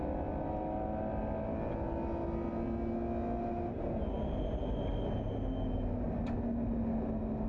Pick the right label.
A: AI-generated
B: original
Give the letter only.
B